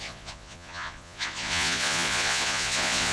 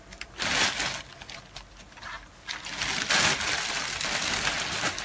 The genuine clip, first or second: second